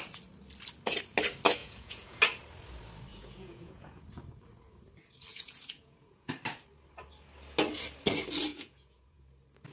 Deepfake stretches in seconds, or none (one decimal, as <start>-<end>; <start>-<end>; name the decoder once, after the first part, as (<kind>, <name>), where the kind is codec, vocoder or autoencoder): 1.6-2.2 (vocoder, Vocos); 3.1-4.0; 5.3-6.3; 8.5-9.2